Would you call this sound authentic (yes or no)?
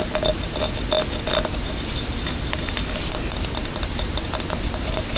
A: yes